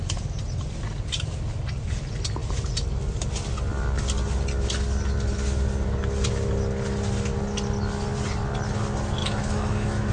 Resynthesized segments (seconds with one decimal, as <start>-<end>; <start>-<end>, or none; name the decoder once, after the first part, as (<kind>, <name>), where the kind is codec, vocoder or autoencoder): 9.2-10.1 (autoencoder, DAC-VAE)